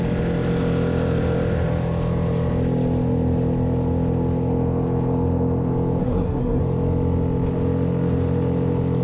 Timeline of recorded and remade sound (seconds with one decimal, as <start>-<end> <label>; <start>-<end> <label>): 0.0-6.0 recorded; 6.0-6.6 remade; 6.6-9.0 recorded